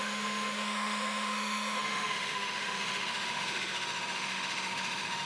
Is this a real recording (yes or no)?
no